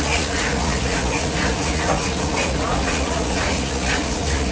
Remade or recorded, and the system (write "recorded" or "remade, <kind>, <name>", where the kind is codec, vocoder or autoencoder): remade, vocoder, Vocos